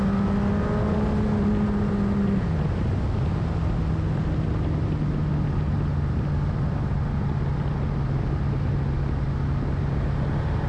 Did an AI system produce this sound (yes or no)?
no